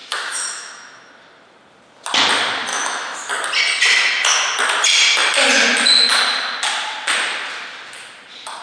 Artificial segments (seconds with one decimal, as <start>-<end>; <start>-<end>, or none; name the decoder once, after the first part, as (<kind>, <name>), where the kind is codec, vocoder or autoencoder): 0.0-1.1 (autoencoder, DAC-VAE); 2.7-3.3